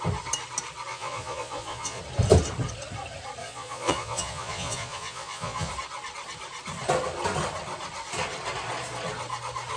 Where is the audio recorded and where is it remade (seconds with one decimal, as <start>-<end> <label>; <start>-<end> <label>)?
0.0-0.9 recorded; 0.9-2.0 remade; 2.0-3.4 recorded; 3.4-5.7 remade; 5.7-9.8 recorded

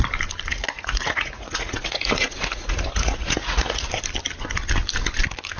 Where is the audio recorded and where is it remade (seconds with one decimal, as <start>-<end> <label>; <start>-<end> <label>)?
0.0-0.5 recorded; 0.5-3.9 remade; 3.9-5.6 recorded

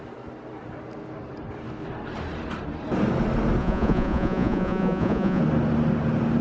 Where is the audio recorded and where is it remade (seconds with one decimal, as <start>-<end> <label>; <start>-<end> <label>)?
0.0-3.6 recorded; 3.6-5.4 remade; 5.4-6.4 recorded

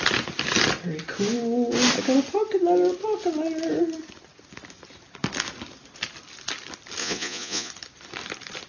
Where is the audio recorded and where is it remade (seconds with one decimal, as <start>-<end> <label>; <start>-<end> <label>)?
0.0-7.0 recorded; 7.0-7.7 remade; 7.7-8.7 recorded

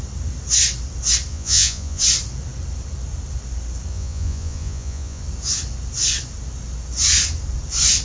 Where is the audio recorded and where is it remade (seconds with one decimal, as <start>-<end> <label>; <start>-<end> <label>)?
0.0-1.3 recorded; 1.3-2.0 remade; 2.0-3.9 recorded; 3.9-5.2 remade; 5.2-8.0 recorded

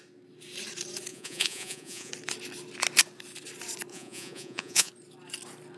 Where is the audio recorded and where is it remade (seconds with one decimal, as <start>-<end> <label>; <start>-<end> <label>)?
0.0-1.1 recorded; 1.1-2.1 remade; 2.1-3.9 recorded; 3.9-4.9 remade; 4.9-5.8 recorded

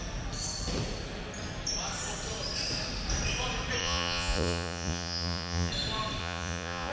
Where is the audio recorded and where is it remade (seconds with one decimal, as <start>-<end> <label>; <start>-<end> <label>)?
0.0-3.8 recorded; 3.8-5.7 remade; 5.7-6.2 recorded; 6.2-6.9 remade

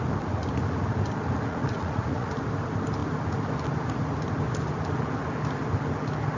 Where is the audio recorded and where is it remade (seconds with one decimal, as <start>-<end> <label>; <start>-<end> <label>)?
0.0-1.5 recorded; 1.5-2.3 remade; 2.3-6.4 recorded